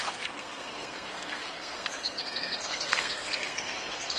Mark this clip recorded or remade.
remade